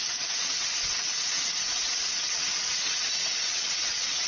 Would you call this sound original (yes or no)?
no